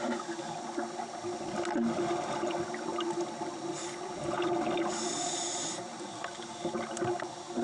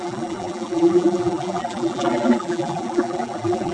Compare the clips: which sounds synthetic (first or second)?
second